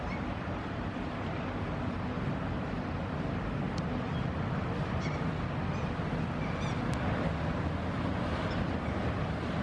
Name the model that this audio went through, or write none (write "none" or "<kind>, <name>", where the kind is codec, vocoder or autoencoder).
none